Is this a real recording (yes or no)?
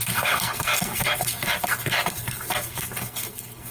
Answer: no